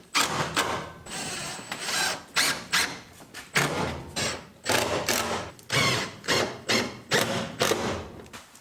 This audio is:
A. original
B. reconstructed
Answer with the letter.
B